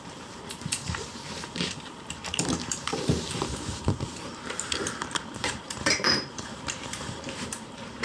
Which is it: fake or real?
fake